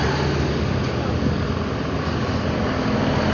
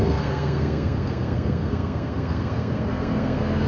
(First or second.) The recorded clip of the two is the first